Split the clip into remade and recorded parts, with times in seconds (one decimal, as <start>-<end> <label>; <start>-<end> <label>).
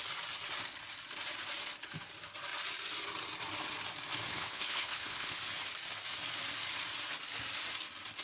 0.0-4.3 recorded; 4.3-5.4 remade; 5.4-8.2 recorded